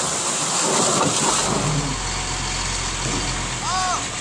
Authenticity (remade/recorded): recorded